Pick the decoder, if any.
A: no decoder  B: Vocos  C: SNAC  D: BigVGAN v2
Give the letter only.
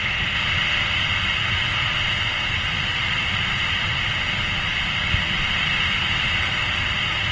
A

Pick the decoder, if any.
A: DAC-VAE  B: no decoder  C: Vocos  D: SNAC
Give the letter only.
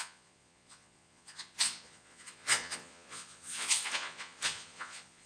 C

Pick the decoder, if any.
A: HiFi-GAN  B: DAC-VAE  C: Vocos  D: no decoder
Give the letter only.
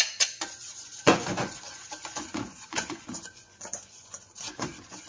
C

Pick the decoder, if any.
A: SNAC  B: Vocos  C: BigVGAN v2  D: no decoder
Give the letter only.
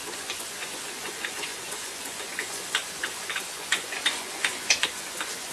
B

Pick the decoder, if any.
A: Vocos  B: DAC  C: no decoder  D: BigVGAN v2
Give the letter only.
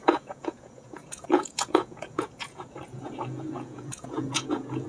A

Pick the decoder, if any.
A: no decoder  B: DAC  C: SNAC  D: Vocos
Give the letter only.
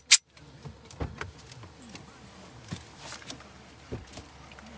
A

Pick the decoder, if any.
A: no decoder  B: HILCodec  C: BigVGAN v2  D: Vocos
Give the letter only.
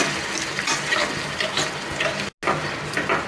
A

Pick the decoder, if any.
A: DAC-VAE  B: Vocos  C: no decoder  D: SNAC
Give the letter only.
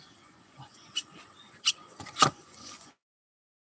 B